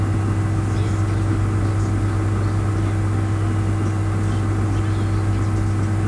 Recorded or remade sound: recorded